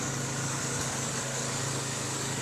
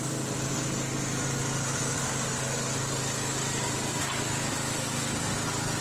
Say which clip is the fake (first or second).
first